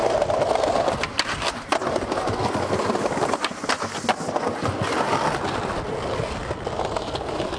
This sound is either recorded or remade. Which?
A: recorded